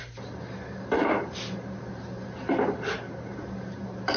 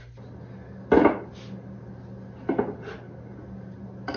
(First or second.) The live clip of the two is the second